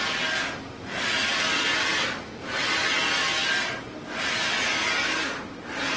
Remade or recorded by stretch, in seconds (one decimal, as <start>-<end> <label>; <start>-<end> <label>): 0.0-6.0 recorded